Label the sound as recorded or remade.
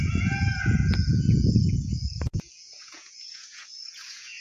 remade